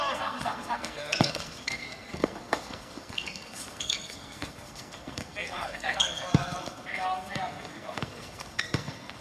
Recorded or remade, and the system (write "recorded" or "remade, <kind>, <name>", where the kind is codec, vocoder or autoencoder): remade, codec, SNAC